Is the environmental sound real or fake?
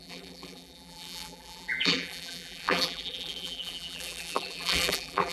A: fake